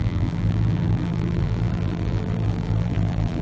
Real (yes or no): no